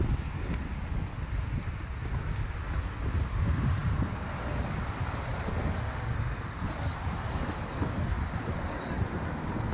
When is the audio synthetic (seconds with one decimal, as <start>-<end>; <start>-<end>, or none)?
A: none